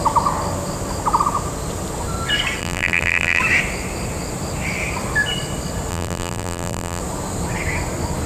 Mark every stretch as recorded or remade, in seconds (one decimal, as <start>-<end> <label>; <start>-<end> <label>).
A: 0.0-2.6 recorded; 2.6-3.4 remade; 3.4-5.9 recorded; 5.9-7.0 remade; 7.0-8.3 recorded